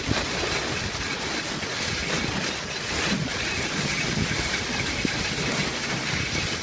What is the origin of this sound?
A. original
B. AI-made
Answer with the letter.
A